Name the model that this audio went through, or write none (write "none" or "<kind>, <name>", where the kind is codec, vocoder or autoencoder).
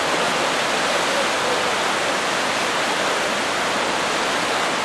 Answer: none